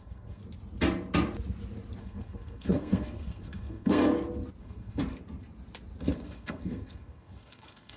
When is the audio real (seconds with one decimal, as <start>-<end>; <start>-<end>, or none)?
0.4-2.0; 4.1-4.6; 5.0-6.0